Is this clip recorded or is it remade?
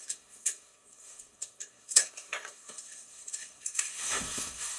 remade